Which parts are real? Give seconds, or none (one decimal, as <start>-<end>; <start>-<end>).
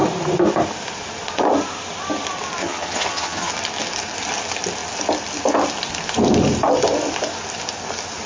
0.0-2.6; 3.5-8.3